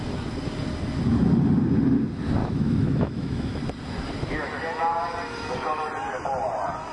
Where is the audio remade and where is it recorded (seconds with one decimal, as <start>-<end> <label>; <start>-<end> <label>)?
0.0-2.4 recorded; 2.4-3.6 remade; 3.6-6.9 recorded